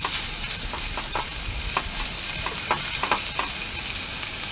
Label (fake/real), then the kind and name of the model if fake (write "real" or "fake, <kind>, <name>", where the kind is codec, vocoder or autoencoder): real